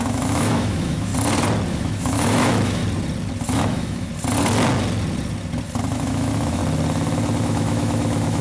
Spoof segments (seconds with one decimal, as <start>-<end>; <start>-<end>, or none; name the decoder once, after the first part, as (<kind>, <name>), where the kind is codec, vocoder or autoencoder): 0.0-1.1 (autoencoder, DAC-VAE); 1.7-2.8; 3.5-4.1; 5.9-6.6; 7.4-8.4